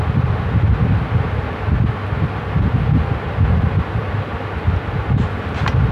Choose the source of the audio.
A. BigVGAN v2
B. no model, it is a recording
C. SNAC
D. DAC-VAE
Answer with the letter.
B